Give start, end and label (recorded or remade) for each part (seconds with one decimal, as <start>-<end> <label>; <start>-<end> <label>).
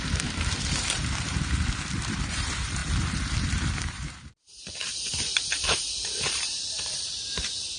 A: 0.0-7.8 remade